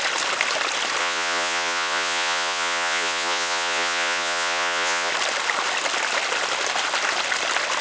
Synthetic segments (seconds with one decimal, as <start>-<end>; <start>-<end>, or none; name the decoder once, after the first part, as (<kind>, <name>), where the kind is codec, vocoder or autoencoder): 1.0-5.1 (vocoder, Vocos)